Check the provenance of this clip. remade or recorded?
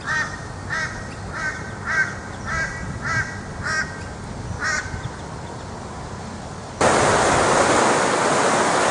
recorded